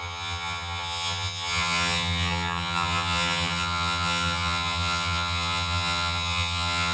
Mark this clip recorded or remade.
remade